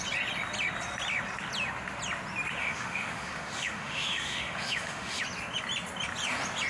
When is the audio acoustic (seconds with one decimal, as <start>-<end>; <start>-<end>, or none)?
0.0-2.6; 5.2-6.7

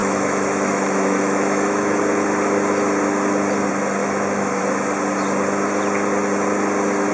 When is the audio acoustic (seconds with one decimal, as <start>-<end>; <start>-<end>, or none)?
2.0-4.0; 4.6-7.1

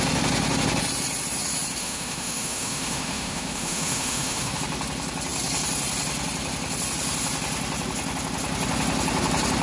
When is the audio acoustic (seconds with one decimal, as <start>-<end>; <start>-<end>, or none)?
0.0-1.8; 4.6-9.6